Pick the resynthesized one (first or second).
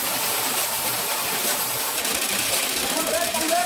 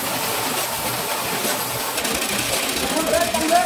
first